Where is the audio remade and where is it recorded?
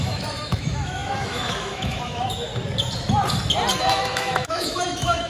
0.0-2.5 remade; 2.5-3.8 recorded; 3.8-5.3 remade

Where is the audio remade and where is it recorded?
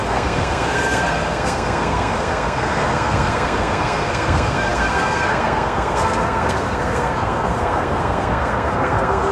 0.0-9.3 remade